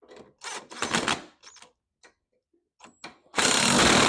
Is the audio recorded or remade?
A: recorded